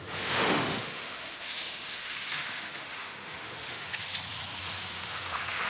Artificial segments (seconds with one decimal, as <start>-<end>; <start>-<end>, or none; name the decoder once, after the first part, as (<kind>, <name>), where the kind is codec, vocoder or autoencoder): 0.0-4.1 (autoencoder, DAC-VAE); 4.6-5.7